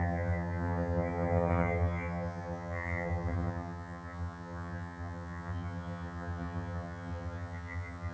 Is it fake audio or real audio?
fake